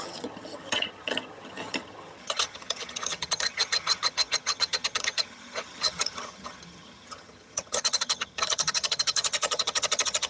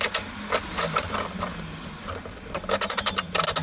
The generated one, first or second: first